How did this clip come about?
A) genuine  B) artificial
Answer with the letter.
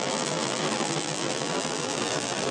B